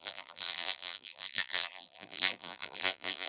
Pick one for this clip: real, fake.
fake